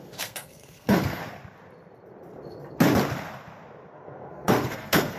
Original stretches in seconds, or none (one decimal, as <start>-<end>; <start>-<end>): 1.2-3.9